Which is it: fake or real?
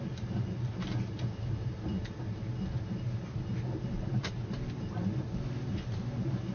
real